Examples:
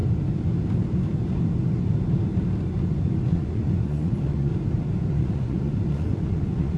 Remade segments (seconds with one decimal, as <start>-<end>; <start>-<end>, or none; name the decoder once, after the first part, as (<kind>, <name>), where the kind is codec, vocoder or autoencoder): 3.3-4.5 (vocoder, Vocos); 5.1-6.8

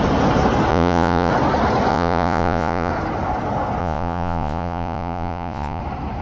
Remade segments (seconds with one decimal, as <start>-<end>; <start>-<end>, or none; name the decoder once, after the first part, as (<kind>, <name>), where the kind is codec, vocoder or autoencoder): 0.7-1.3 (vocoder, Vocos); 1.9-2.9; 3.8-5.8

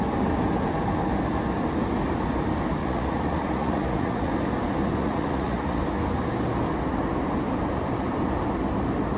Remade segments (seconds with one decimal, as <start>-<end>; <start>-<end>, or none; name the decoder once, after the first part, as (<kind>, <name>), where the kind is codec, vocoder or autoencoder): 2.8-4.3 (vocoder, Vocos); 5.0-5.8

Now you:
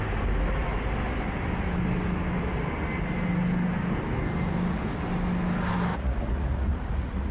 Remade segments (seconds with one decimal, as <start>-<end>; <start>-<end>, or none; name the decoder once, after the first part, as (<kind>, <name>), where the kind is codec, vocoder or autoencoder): 5.9-7.3 (vocoder, Vocos)